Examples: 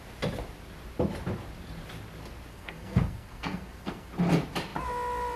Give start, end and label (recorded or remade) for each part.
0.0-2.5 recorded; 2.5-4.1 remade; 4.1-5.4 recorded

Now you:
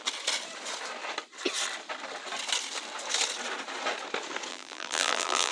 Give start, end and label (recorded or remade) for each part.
0.0-4.5 recorded; 4.5-5.5 remade

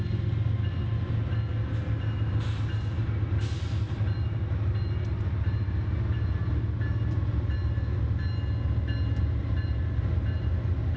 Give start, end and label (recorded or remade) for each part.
0.0-2.9 recorded; 2.9-4.7 remade; 4.7-11.0 recorded

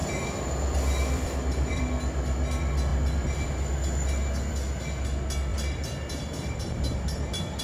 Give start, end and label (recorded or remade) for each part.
0.0-1.8 remade; 1.8-5.5 recorded; 5.5-7.6 remade